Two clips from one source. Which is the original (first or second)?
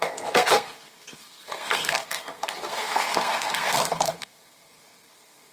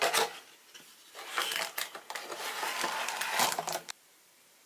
second